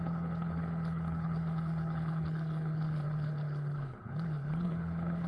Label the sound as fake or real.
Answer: fake